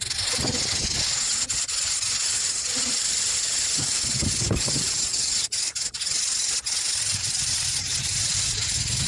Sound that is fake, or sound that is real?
real